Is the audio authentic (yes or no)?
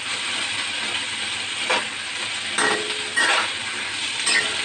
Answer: yes